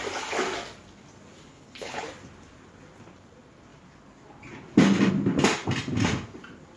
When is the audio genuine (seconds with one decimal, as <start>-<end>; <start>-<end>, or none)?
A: 0.0-1.5; 2.0-6.8